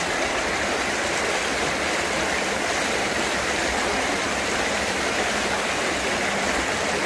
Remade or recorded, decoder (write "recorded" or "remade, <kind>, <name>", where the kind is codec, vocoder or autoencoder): recorded